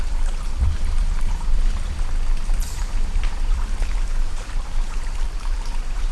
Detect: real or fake fake